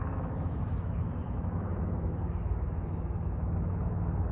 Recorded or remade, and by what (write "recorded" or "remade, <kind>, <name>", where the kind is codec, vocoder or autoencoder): remade, autoencoder, DAC-VAE